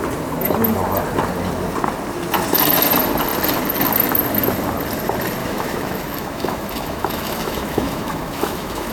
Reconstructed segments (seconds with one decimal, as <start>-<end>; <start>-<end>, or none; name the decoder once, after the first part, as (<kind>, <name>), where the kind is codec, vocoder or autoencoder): 5.4-8.9 (autoencoder, DAC-VAE)

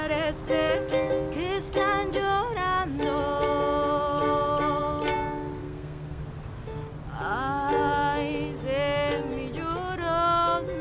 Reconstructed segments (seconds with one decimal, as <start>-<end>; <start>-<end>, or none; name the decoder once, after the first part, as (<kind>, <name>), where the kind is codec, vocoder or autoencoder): 5.6-6.2 (codec, SNAC)

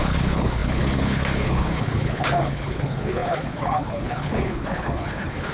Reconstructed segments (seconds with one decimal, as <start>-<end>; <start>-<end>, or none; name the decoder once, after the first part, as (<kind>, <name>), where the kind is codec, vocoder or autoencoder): 0.0-5.5 (codec, HILCodec)

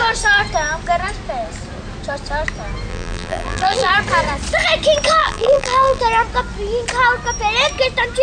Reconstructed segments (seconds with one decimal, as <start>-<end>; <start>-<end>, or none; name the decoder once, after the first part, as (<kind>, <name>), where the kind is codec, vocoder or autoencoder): 2.9-3.9 (vocoder, BigVGAN v2); 5.2-6.0